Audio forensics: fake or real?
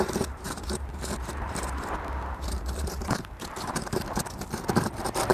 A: fake